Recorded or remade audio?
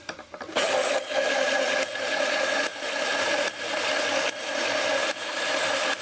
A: remade